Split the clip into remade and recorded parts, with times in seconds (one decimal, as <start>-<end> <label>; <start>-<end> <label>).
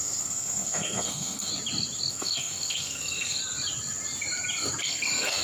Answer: 0.0-1.5 remade; 1.5-2.1 recorded; 2.1-3.4 remade; 3.4-4.8 recorded; 4.8-5.4 remade